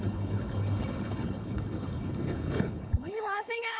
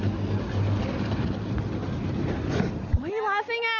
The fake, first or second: first